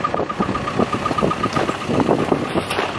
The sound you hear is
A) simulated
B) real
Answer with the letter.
B